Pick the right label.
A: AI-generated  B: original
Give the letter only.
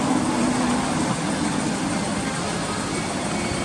A